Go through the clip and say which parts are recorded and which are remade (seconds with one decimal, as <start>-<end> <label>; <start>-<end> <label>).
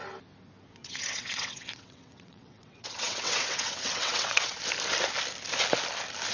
0.0-0.8 recorded; 0.8-4.6 remade; 4.6-6.3 recorded